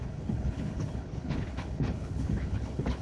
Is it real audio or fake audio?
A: fake